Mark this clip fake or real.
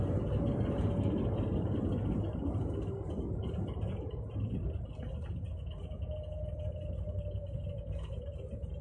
real